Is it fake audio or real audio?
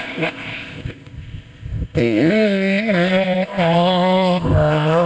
fake